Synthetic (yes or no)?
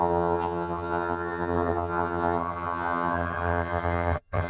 yes